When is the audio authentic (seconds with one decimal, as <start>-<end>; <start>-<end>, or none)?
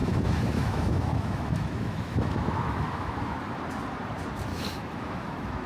3.4-4.5